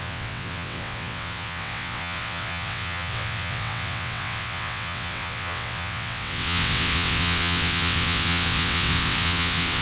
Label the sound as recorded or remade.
remade